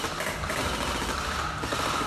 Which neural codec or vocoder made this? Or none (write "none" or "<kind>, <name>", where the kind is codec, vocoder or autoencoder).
none